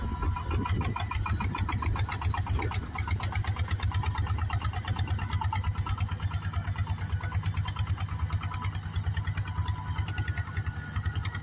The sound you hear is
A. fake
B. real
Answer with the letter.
B